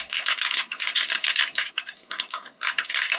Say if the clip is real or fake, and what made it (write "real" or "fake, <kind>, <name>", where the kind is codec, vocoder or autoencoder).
fake, codec, SNAC